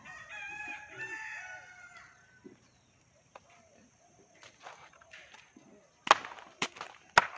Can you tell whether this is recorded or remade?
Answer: recorded